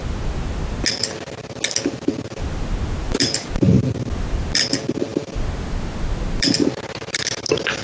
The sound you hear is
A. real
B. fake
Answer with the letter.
A